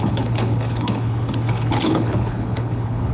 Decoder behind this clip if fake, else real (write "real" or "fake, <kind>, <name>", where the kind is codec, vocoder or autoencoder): fake, codec, HILCodec